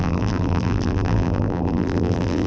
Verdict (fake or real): fake